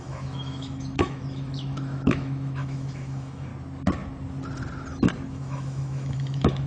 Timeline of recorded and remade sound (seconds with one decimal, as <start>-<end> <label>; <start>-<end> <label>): 0.0-3.5 remade; 3.5-5.3 recorded; 5.3-6.7 remade